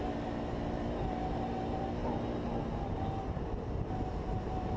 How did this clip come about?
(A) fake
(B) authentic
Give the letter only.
B